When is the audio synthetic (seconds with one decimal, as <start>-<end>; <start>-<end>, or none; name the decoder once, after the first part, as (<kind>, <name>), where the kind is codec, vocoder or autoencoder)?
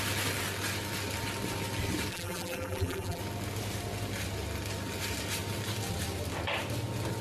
2.1-3.2 (vocoder, BigVGAN v2)